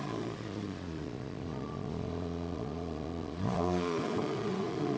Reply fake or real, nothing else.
fake